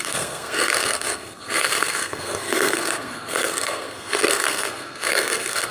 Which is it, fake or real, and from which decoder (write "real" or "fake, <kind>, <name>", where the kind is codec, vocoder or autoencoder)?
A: fake, codec, SNAC